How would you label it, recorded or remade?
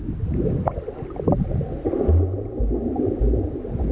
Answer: recorded